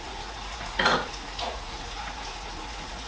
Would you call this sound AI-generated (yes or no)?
yes